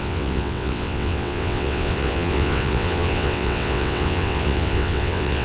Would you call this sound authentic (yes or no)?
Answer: no